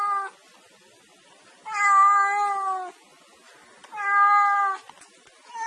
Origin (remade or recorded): recorded